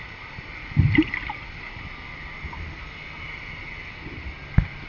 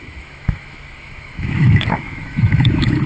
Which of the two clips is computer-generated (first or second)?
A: second